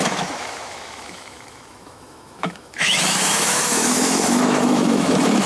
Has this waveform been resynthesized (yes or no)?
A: yes